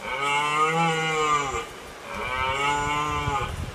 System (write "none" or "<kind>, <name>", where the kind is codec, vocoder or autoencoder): none